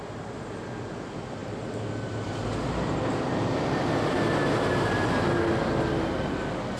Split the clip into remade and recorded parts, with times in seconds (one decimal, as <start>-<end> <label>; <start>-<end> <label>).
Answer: 0.0-6.8 recorded